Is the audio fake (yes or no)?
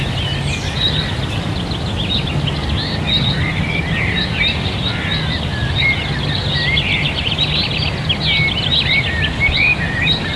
no